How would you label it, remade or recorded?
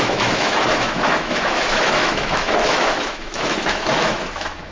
remade